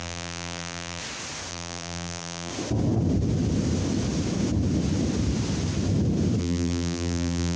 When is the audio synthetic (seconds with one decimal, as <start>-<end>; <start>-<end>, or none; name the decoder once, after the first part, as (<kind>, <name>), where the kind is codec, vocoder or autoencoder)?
0.0-1.0 (vocoder, BigVGAN v2); 1.5-2.5; 6.4-7.6